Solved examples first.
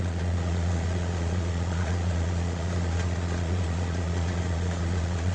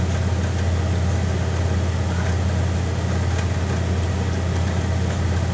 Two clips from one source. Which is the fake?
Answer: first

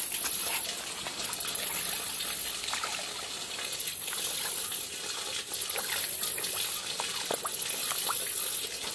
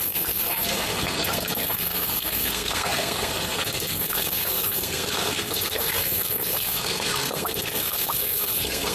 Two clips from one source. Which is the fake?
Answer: second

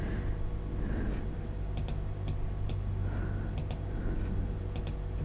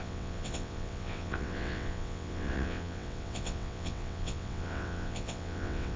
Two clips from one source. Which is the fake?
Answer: second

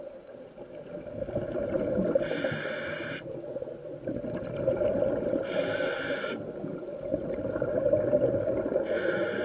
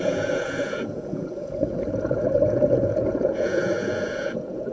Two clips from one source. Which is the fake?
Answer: second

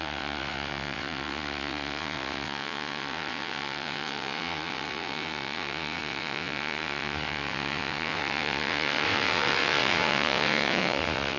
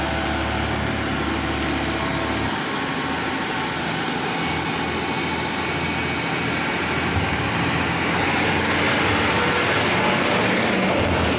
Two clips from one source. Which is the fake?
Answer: first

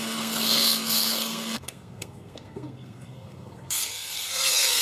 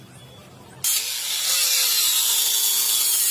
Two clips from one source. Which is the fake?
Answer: first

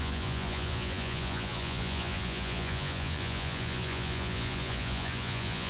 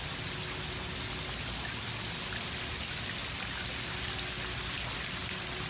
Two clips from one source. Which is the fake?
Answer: first